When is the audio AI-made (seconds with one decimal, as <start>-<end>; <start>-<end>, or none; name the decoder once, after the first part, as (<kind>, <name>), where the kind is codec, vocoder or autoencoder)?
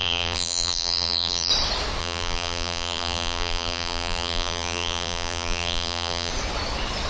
0.0-1.5 (vocoder, BigVGAN v2); 2.0-6.3